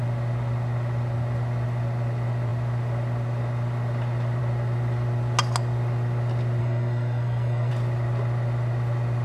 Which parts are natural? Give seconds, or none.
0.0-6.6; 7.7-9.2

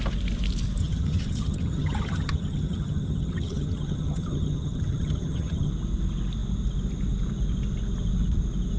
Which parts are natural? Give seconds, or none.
0.0-0.8; 5.7-8.8

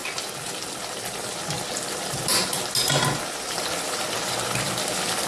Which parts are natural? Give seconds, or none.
0.0-5.3

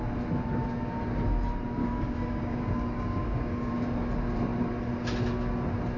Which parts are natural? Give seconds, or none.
0.0-1.8; 3.7-6.0

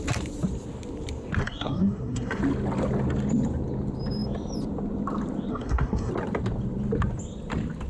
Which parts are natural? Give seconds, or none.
0.0-1.4; 2.4-5.5; 6.1-7.9

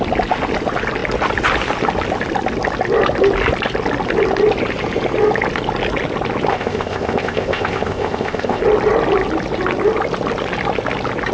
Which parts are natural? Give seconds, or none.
0.0-6.5; 8.6-11.3